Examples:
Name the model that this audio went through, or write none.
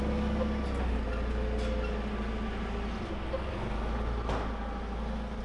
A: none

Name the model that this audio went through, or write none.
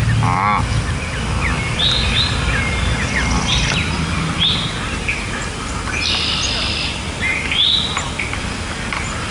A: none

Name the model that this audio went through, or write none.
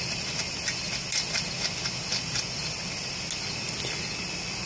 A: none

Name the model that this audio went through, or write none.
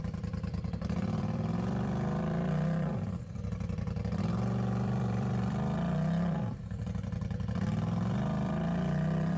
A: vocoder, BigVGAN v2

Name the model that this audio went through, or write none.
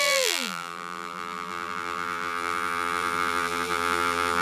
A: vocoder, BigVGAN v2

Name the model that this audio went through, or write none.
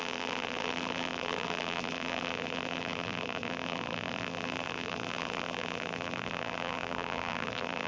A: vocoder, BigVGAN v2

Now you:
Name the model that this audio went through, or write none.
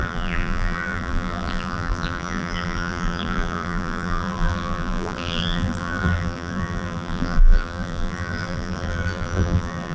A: vocoder, BigVGAN v2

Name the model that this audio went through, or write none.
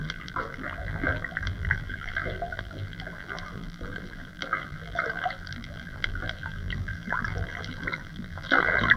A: vocoder, BigVGAN v2